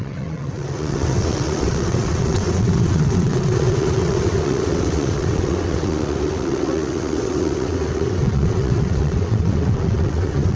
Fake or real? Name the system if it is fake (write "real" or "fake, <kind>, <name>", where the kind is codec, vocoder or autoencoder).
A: fake, vocoder, WaveNeXt